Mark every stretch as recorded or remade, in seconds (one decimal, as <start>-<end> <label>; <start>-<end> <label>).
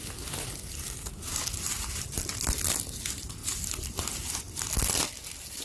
0.0-3.4 recorded; 3.4-4.6 remade; 4.6-5.6 recorded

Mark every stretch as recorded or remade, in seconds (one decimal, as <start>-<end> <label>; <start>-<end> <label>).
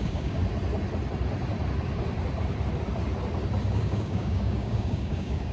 0.0-0.4 remade; 0.4-3.7 recorded; 3.7-5.5 remade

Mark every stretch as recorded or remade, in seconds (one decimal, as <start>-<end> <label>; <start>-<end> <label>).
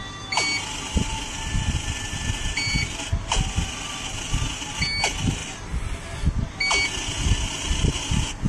0.0-8.5 recorded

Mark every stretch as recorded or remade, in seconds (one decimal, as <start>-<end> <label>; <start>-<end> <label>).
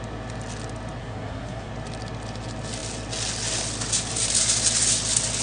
0.0-1.0 recorded; 1.0-1.7 remade; 1.7-5.4 recorded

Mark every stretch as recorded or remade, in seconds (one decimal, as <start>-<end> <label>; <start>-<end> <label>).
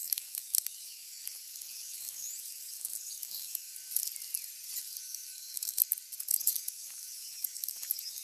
0.0-3.9 remade; 3.9-4.8 recorded; 4.8-5.8 remade; 5.8-6.3 recorded; 6.3-8.2 remade